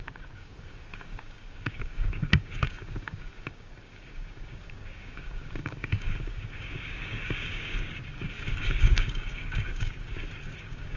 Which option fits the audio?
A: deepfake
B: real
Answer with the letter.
A